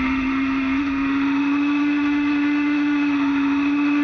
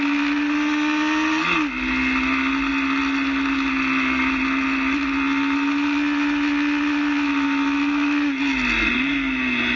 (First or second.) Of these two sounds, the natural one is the second